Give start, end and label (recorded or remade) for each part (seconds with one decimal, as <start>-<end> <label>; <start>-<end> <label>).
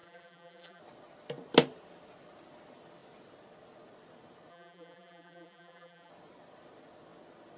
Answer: 0.0-0.8 remade; 0.8-4.5 recorded; 4.5-6.1 remade; 6.1-7.6 recorded